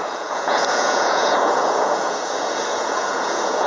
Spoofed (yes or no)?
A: yes